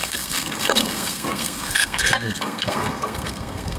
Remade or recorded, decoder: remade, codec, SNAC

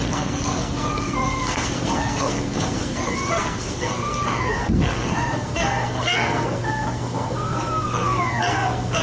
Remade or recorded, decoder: remade, codec, SNAC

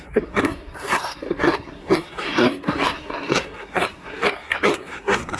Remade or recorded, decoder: remade, codec, SNAC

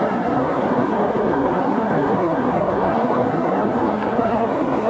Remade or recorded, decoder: remade, codec, SNAC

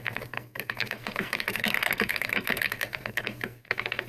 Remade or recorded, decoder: remade, codec, SNAC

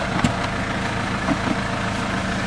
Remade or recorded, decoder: recorded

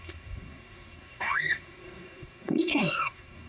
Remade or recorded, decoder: remade, codec, SNAC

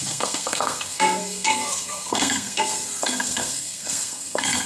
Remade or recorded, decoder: remade, codec, SNAC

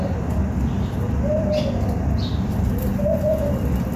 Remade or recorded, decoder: recorded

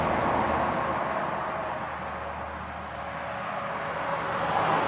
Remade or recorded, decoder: recorded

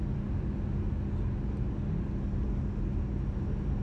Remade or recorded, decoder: recorded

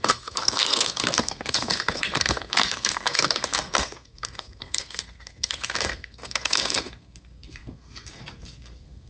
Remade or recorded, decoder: remade, codec, SNAC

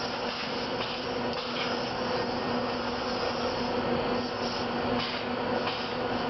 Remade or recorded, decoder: recorded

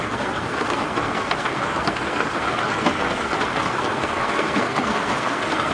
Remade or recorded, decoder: remade, codec, SNAC